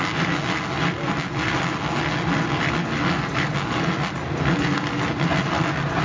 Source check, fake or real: real